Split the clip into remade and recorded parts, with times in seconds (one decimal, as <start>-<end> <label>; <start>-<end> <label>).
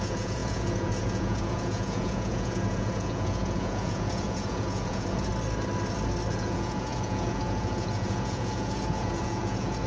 0.0-5.3 remade; 5.3-6.3 recorded; 6.3-9.9 remade